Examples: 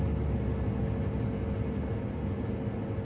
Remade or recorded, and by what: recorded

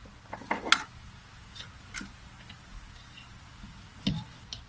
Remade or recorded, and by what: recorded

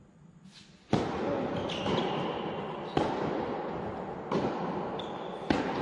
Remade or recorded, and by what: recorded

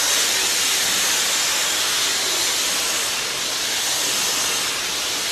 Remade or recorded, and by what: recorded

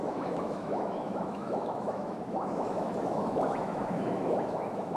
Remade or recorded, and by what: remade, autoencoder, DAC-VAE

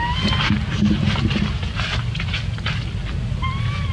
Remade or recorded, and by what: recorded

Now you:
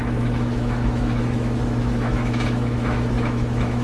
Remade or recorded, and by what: remade, autoencoder, DAC-VAE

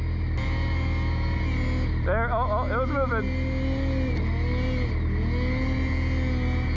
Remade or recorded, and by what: recorded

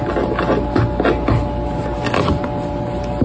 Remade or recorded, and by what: recorded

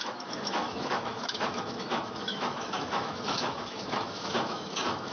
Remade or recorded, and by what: remade, autoencoder, DAC-VAE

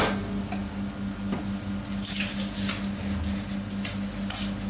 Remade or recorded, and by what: recorded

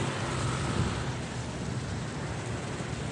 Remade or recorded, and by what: recorded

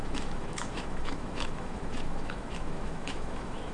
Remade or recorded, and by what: remade, autoencoder, DAC-VAE